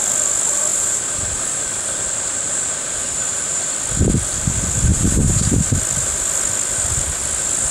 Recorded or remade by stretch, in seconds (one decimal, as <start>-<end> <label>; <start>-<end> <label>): 0.0-0.7 recorded; 0.7-3.6 remade; 3.6-4.9 recorded; 4.9-5.6 remade; 5.6-7.7 recorded